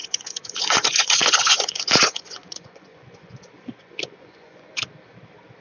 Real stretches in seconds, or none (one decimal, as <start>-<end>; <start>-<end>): 3.4-3.8; 4.9-5.6